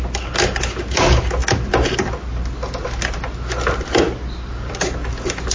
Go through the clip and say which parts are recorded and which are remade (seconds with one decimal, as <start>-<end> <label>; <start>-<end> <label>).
0.0-5.5 recorded